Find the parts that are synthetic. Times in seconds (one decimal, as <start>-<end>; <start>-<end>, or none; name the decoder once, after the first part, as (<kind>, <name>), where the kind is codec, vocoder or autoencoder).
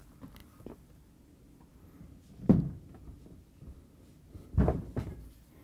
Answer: none